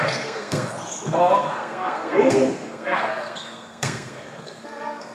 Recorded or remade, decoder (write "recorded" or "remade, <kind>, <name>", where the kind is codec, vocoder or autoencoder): remade, codec, SNAC